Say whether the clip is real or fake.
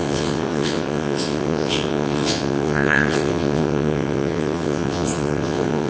fake